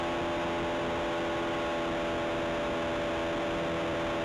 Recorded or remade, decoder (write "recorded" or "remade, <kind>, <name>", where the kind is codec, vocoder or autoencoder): recorded